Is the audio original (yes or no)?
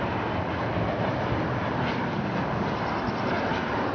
yes